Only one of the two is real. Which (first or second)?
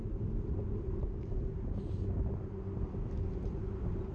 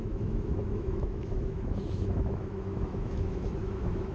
first